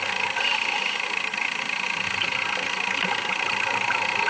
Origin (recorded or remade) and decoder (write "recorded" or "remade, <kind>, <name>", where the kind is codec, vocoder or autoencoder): recorded